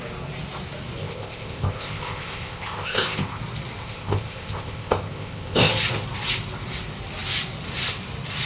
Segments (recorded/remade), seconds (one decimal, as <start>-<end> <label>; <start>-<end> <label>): 0.0-1.0 recorded; 1.0-3.4 remade; 3.4-3.8 recorded; 3.8-5.7 remade; 5.7-8.5 recorded

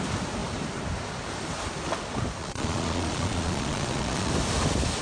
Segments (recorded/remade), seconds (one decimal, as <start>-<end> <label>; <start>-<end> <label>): 0.0-2.4 recorded; 2.4-4.3 remade; 4.3-5.0 recorded